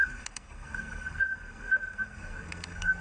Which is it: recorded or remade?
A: remade